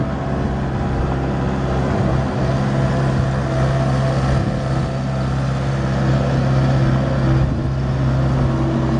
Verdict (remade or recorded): recorded